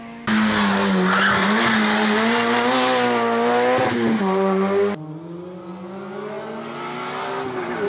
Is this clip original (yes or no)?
yes